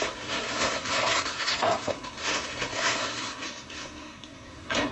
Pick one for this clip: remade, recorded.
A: remade